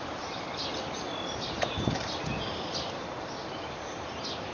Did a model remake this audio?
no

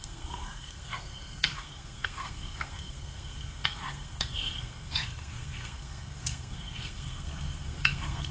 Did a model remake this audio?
yes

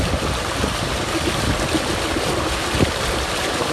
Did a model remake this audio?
no